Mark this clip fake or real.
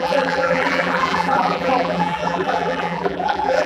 fake